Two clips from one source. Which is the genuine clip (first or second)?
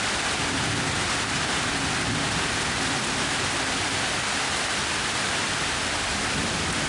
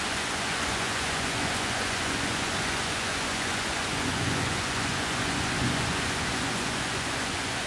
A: first